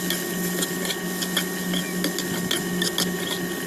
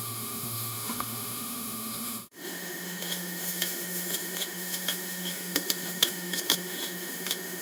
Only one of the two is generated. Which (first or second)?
second